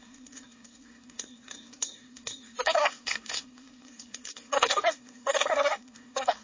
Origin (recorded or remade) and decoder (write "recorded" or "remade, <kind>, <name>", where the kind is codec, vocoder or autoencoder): remade, codec, SNAC